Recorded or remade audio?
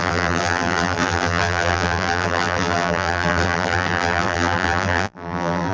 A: remade